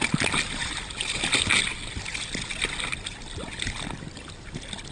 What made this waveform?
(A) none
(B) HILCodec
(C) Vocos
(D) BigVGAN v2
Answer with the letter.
A